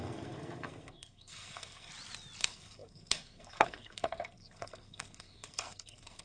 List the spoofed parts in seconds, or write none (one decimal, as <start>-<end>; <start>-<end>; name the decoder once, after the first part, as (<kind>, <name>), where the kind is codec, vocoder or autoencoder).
0.0-1.9 (codec, SNAC); 2.4-6.2